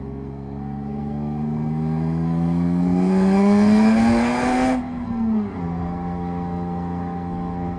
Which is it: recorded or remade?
remade